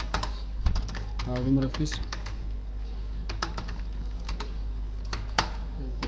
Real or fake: fake